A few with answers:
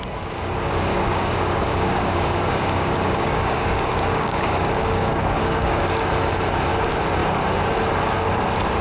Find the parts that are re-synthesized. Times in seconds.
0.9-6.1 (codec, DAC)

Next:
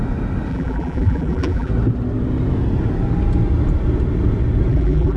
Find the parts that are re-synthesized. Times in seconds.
0.5-1.7 (vocoder, BigVGAN v2); 4.7-5.2